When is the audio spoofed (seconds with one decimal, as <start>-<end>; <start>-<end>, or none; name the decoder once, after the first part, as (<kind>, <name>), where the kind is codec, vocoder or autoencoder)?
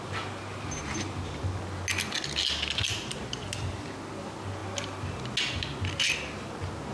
none